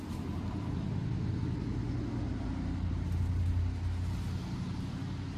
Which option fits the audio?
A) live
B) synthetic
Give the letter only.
A